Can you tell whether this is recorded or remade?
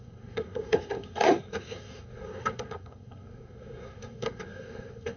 remade